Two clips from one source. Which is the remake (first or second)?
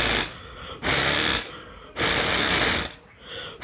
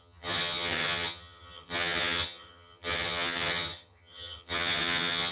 second